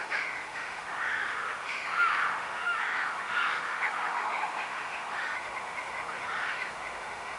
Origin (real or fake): fake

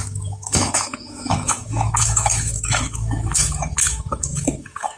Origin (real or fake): fake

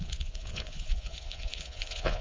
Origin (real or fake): fake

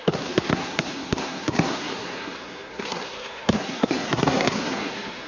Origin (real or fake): fake